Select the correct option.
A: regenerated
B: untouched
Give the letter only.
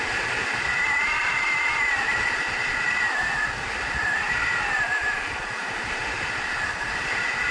B